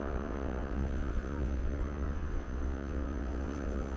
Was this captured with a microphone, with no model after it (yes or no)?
no